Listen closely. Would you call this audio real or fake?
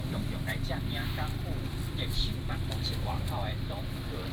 fake